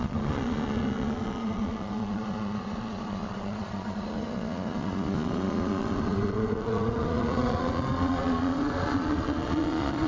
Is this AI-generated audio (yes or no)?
yes